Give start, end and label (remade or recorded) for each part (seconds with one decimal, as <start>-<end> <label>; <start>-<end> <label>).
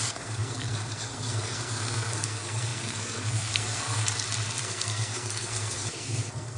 0.0-4.0 remade; 4.0-4.6 recorded; 4.6-6.6 remade